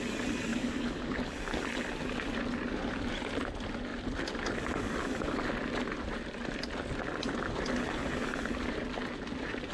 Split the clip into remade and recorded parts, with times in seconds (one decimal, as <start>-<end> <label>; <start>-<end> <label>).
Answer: 0.0-0.5 recorded; 0.5-1.2 remade; 1.2-9.7 recorded